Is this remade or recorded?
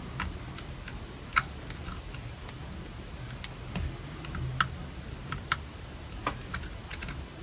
recorded